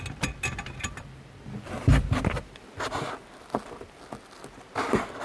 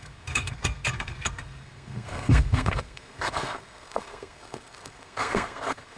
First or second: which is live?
first